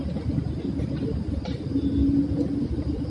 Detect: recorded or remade remade